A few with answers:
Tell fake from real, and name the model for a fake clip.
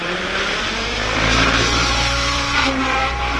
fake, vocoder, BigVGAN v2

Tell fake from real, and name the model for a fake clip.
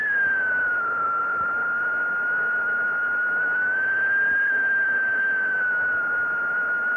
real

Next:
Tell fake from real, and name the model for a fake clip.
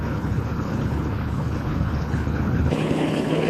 fake, codec, HILCodec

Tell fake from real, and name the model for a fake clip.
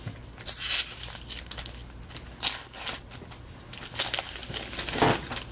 real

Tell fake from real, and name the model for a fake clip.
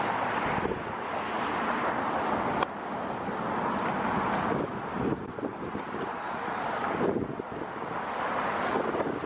real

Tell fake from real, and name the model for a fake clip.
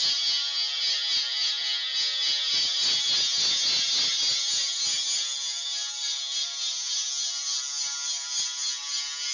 real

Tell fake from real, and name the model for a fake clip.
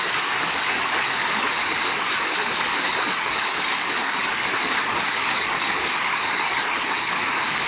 fake, codec, DAC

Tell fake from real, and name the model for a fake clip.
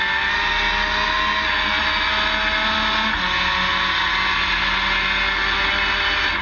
real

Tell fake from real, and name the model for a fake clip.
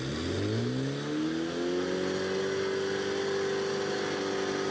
real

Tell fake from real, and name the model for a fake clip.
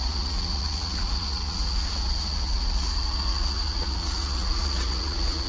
fake, vocoder, Vocos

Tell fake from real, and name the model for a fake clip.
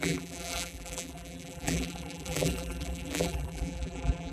fake, vocoder, BigVGAN v2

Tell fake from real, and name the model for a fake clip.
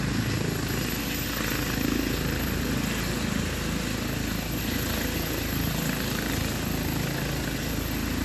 real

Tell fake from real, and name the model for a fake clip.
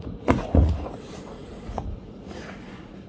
fake, vocoder, Vocos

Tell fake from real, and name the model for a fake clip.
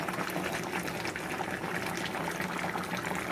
real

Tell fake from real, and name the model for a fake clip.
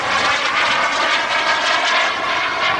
real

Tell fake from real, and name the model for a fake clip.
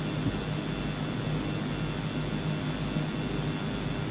real